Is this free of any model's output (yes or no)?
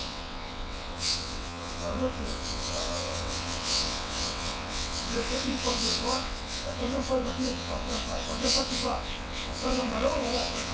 no